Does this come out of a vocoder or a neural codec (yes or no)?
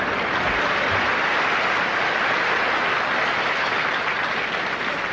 no